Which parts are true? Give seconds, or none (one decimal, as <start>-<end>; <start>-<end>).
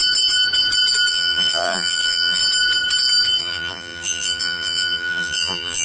0.0-1.1; 2.4-3.4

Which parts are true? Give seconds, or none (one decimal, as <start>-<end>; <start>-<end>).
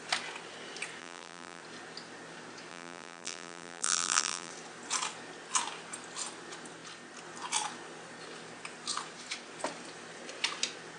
0.0-1.0; 1.6-2.7; 4.5-11.0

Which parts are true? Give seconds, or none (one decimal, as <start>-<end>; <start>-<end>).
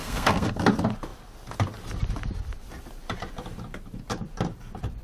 0.6-5.0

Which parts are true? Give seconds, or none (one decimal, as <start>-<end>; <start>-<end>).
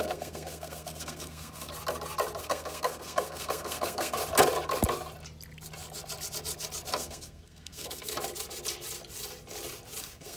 1.7-2.4; 4.2-6.9; 8.1-10.0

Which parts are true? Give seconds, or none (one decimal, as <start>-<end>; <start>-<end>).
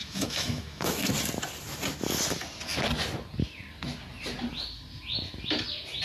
1.1-6.0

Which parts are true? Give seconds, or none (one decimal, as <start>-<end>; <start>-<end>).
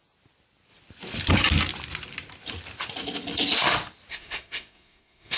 0.0-4.1